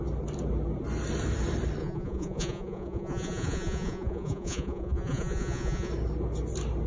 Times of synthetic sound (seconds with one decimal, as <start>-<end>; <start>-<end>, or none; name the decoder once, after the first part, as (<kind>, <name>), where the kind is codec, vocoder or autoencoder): 1.8-5.9 (vocoder, Vocos)